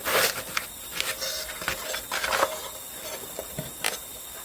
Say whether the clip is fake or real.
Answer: real